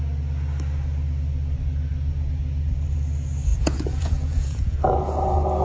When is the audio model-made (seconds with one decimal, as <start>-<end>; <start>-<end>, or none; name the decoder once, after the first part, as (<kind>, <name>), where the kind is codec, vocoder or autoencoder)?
3.5-4.8 (vocoder, Vocos)